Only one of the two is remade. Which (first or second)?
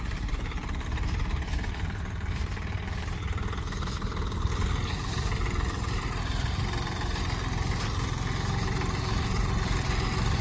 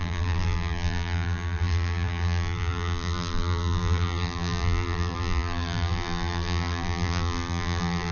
second